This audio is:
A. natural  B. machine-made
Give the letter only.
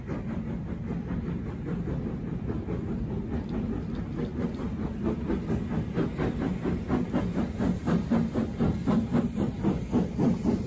A